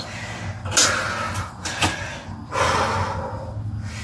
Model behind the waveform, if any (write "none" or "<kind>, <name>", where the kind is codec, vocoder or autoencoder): none